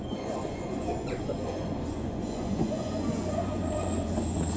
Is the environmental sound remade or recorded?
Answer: remade